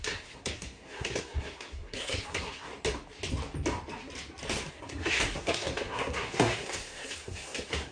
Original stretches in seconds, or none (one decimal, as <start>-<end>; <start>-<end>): 2.7-4.7